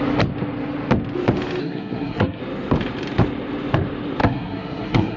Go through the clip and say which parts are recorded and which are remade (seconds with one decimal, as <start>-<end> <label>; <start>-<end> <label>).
0.0-1.6 recorded; 1.6-2.4 remade; 2.4-4.2 recorded; 4.2-5.2 remade